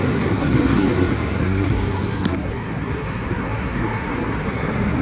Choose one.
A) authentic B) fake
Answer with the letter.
B